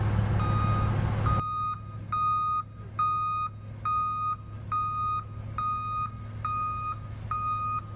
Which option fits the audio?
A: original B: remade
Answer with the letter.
A